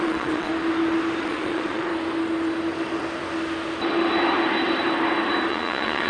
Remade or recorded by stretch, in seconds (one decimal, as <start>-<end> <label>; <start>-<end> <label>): 0.0-0.5 remade; 0.5-1.2 recorded; 1.2-1.9 remade; 1.9-5.5 recorded; 5.5-6.1 remade